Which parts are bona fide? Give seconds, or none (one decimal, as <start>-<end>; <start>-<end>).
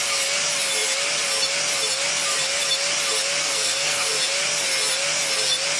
0.0-3.4; 4.1-5.8